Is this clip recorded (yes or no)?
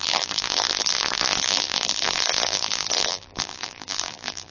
no